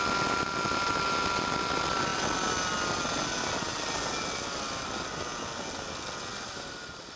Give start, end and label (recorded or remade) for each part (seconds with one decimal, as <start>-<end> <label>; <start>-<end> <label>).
0.0-7.2 recorded